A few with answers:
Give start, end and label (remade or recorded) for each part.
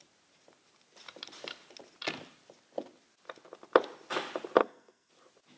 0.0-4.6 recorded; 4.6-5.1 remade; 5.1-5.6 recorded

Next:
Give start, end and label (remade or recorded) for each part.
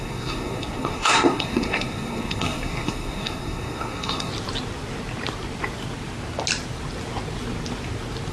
0.0-4.3 remade; 4.3-8.3 recorded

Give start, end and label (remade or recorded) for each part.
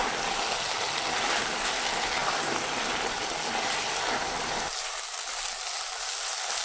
0.0-6.6 recorded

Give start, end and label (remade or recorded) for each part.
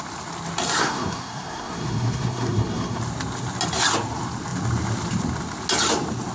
0.0-0.8 recorded; 0.8-3.0 remade; 3.0-6.3 recorded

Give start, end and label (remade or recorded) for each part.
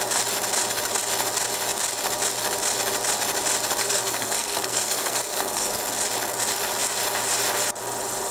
0.0-3.8 recorded; 3.8-5.8 remade; 5.8-8.3 recorded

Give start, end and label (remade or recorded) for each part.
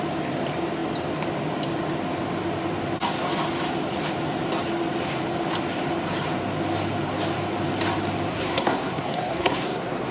0.0-8.3 recorded; 8.3-10.1 remade